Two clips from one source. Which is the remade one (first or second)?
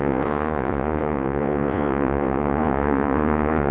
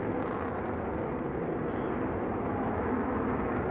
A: first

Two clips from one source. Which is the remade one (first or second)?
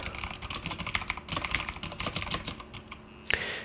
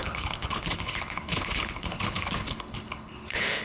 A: second